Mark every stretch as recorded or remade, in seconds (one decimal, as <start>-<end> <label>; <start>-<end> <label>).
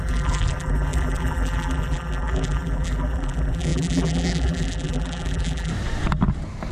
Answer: 0.0-5.7 remade; 5.7-6.7 recorded